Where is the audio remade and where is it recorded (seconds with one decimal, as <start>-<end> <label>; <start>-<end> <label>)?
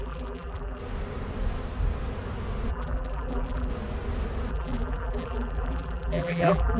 0.0-0.8 remade; 0.8-2.7 recorded; 2.7-3.7 remade; 3.7-4.5 recorded; 4.5-6.8 remade